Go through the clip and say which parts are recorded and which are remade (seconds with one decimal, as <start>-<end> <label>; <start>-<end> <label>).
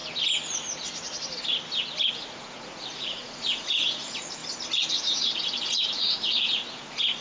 0.0-2.1 recorded; 2.1-4.4 remade; 4.4-4.9 recorded; 4.9-7.2 remade